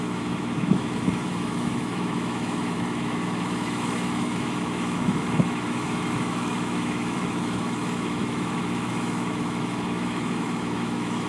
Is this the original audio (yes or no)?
no